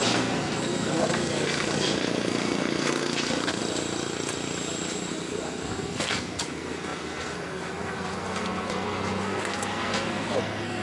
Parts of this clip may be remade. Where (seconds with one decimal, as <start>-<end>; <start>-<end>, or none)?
0.0-3.6; 5.1-10.8